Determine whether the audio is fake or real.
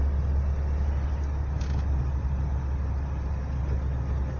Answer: real